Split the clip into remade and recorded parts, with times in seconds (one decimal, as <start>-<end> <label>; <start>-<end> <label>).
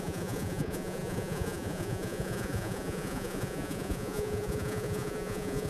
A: 0.0-5.7 remade